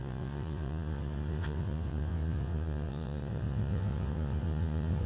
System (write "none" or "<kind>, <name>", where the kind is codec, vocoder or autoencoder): vocoder, WaveNeXt